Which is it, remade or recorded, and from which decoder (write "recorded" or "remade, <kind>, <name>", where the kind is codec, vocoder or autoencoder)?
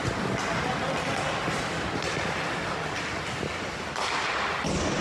recorded